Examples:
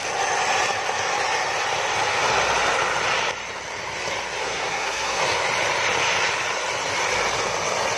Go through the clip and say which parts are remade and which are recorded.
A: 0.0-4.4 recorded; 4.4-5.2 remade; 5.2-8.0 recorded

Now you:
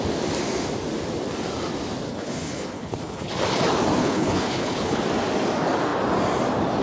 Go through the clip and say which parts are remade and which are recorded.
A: 0.0-2.1 recorded; 2.1-3.3 remade; 3.3-4.0 recorded; 4.0-5.0 remade; 5.0-6.8 recorded

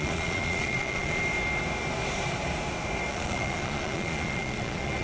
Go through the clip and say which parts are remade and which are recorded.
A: 0.0-1.2 remade; 1.2-3.1 recorded; 3.1-5.0 remade